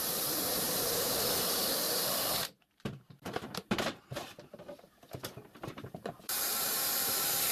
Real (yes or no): no